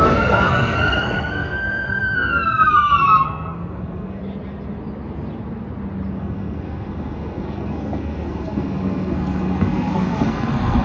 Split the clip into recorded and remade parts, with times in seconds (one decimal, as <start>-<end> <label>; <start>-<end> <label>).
0.0-4.2 remade; 4.2-6.2 recorded; 6.2-10.8 remade